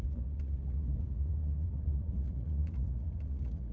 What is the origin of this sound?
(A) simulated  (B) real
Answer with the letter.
A